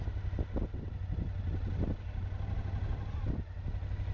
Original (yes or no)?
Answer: yes